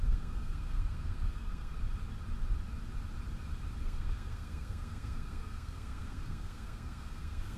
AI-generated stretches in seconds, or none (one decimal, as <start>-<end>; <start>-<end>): 0.0-1.7; 3.8-7.6